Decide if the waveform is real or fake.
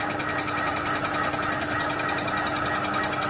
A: real